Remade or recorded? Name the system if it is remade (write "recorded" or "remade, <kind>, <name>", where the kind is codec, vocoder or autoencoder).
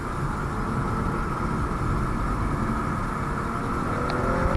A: recorded